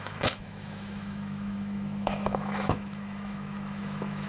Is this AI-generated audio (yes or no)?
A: yes